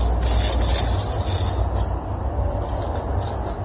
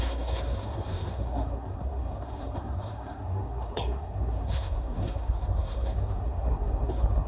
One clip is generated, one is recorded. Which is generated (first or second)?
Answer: second